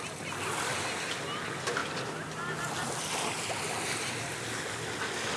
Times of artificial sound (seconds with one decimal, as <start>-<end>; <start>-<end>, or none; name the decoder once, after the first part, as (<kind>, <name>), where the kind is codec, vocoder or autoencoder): none